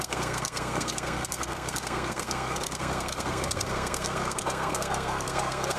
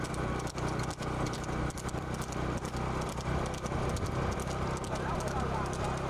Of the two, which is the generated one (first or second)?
first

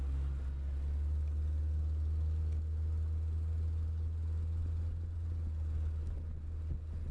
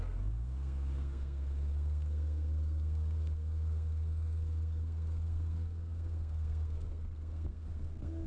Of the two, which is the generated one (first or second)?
second